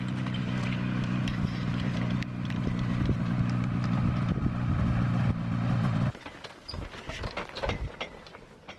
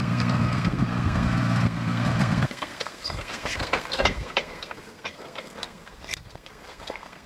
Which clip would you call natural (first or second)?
first